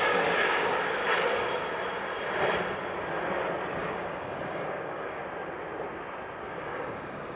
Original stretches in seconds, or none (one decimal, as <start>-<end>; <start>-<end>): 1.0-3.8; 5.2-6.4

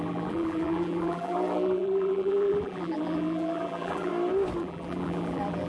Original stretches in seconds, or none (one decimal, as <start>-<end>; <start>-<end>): 4.1-4.6

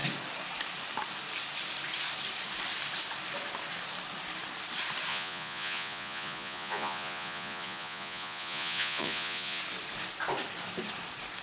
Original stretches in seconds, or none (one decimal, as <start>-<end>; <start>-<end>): 0.0-5.1; 9.6-11.4

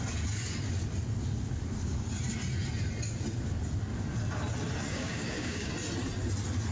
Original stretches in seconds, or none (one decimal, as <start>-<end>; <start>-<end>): 0.0-4.9; 5.7-6.7

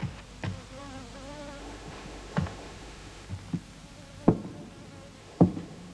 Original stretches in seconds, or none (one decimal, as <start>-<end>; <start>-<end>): 0.0-1.6; 3.3-5.2

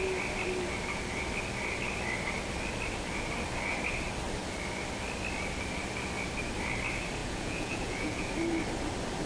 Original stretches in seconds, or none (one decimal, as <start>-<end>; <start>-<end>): 0.0-7.2; 8.3-9.3

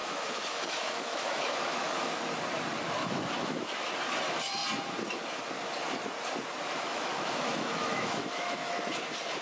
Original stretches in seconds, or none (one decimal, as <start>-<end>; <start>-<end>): 2.4-3.0; 3.9-6.9; 9.0-9.4

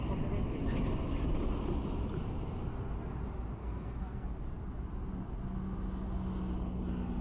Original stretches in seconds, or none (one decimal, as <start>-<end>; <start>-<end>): 0.0-3.6; 4.3-7.2